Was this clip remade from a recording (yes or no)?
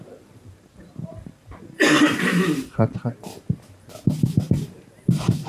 yes